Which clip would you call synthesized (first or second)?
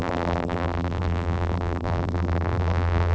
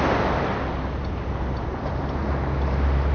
first